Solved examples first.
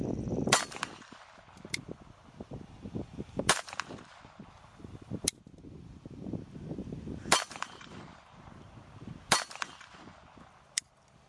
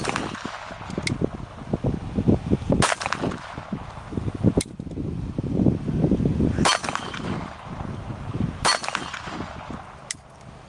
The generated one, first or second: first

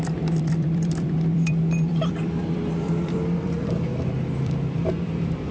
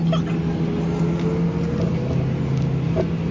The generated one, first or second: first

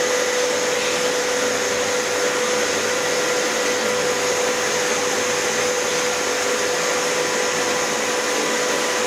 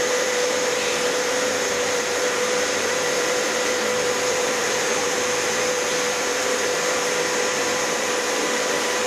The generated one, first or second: second